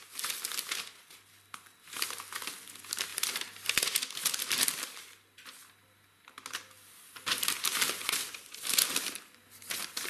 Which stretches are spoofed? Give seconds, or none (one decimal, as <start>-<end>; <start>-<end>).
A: none